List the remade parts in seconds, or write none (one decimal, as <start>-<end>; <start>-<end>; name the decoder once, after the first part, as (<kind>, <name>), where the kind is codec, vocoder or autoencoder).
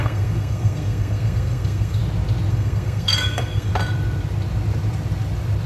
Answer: 0.0-2.0 (codec, SNAC); 2.5-3.7